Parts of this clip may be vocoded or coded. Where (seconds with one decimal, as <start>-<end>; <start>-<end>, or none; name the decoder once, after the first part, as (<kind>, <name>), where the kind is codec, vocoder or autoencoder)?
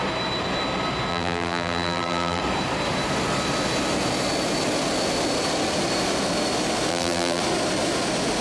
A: 1.1-2.4 (vocoder, BigVGAN v2); 6.9-7.4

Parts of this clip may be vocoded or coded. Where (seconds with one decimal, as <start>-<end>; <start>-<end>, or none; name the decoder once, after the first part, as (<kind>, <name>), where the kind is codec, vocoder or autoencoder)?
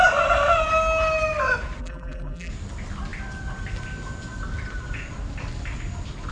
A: 1.8-2.5 (vocoder, BigVGAN v2)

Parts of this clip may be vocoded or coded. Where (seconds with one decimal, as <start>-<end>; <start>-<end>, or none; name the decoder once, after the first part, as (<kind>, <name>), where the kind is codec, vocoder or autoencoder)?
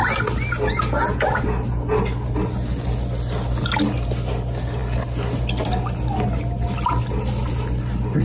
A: none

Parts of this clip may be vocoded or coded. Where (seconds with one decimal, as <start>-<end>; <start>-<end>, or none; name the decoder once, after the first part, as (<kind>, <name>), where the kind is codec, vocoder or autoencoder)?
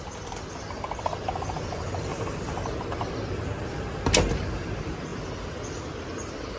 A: 2.1-3.1 (vocoder, BigVGAN v2)